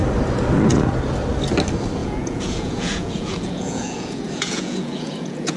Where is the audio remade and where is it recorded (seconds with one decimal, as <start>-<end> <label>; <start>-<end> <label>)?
0.0-2.0 recorded; 2.0-5.6 remade